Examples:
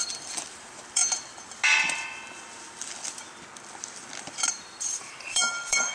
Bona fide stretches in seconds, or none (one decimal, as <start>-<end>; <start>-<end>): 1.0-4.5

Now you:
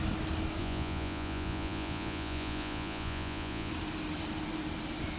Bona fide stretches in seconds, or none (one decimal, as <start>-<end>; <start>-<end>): 0.0-0.6; 3.7-5.2

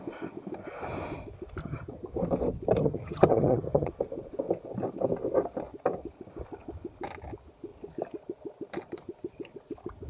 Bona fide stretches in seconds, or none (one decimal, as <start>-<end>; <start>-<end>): 0.0-1.6; 2.1-2.8; 3.9-10.1